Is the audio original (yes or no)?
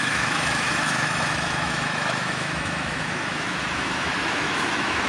no